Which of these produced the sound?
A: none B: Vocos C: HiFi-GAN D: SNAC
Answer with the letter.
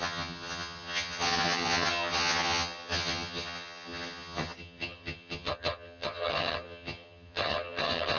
C